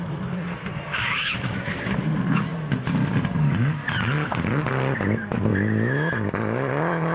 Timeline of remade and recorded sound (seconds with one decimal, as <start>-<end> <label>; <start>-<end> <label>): 0.0-0.9 recorded; 0.9-2.0 remade; 2.0-5.5 recorded; 5.5-6.1 remade; 6.1-7.1 recorded